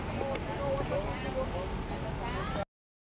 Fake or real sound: real